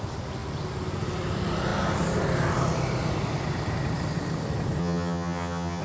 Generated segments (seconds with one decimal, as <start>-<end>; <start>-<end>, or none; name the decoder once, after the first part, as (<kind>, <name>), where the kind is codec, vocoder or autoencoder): 4.8-5.8 (vocoder, HiFi-GAN)